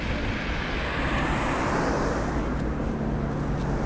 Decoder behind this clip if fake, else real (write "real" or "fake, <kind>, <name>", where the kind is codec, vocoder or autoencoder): real